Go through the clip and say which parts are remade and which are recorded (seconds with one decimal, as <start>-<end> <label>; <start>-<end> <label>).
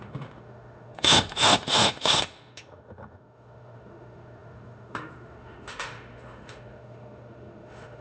0.0-8.0 remade